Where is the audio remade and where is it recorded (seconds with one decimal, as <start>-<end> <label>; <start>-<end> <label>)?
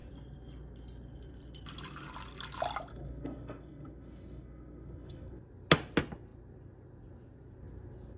0.0-2.9 recorded; 2.9-5.4 remade; 5.4-8.2 recorded